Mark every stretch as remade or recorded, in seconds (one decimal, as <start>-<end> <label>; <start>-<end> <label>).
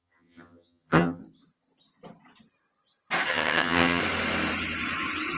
0.0-1.2 remade; 1.2-3.3 recorded; 3.3-4.0 remade; 4.0-5.4 recorded